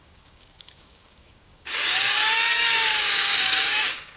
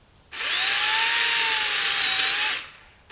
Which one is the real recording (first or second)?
second